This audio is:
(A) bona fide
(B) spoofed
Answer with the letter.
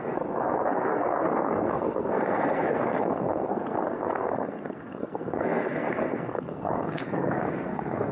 B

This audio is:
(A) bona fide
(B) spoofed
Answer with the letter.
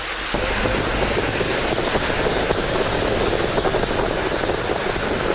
A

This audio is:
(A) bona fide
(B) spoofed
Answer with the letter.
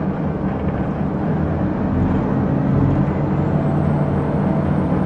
A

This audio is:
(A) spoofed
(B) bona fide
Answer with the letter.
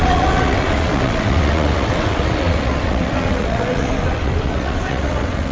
A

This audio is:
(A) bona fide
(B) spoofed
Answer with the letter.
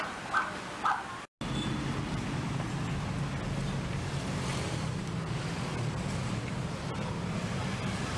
A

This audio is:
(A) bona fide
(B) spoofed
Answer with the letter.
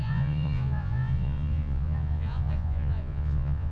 B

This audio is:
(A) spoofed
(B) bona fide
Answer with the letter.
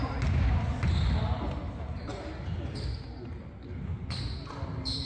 B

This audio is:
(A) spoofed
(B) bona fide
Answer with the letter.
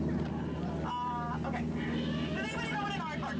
B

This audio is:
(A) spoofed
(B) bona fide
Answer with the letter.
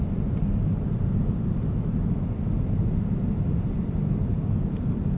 A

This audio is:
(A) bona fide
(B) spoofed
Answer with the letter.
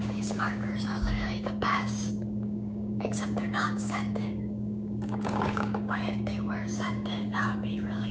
B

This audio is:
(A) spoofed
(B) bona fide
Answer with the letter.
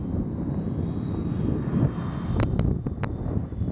B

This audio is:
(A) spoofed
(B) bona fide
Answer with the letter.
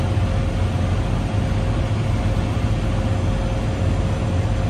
B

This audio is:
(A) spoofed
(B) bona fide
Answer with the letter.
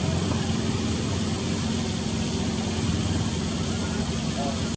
A